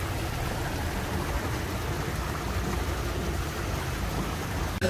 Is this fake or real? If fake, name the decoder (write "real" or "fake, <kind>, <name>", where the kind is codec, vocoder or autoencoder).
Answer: real